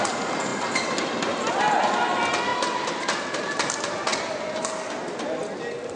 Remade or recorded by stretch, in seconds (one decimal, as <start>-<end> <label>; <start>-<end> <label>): 0.0-6.0 recorded